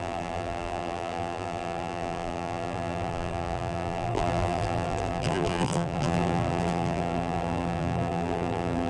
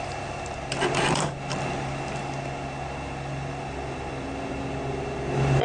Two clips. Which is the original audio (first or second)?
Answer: second